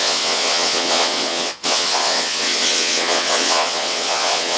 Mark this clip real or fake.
fake